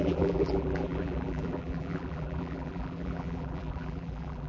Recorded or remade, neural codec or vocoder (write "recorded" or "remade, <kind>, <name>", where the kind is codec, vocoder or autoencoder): remade, vocoder, BigVGAN v2